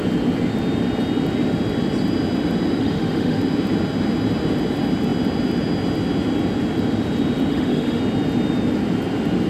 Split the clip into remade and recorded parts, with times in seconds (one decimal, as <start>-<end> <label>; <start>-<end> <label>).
0.0-2.8 recorded; 2.8-3.4 remade; 3.4-7.5 recorded; 7.5-8.0 remade; 8.0-9.5 recorded